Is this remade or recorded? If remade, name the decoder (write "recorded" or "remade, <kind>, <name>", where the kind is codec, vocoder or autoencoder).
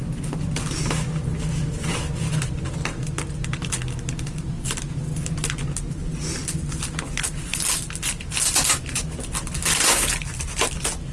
recorded